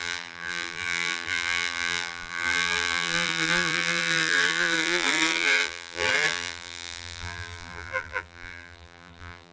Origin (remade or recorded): remade